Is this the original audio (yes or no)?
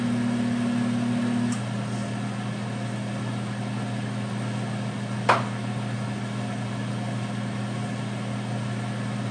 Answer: yes